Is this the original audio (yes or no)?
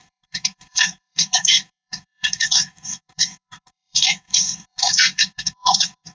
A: no